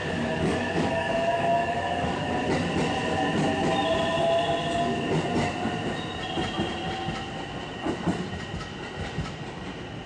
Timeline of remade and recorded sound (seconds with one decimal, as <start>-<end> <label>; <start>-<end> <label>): 0.0-2.3 remade; 2.3-10.1 recorded